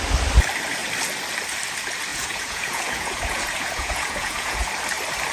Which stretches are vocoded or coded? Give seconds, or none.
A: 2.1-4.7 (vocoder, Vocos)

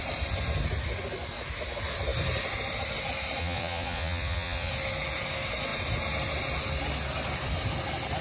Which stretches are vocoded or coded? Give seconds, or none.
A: 3.4-4.7 (vocoder, Vocos)

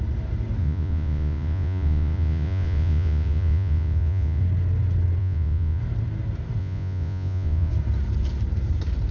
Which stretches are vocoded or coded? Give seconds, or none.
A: 0.6-4.4 (vocoder, Vocos); 5.2-5.8; 6.6-7.7

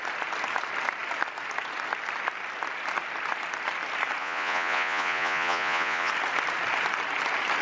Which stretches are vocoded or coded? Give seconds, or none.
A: 4.2-6.1 (vocoder, Vocos)